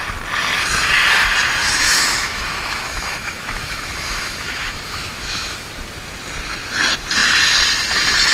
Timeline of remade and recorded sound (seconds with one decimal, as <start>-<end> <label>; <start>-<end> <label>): 0.0-1.6 recorded; 1.6-5.7 remade; 5.7-8.3 recorded